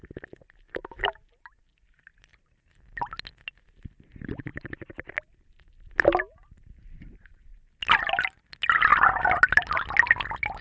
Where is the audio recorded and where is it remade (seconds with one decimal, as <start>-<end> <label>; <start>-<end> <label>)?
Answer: 0.0-4.5 recorded; 4.5-5.1 remade; 5.1-10.6 recorded